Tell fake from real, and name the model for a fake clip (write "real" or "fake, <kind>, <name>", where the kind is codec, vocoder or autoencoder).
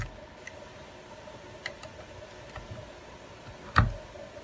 real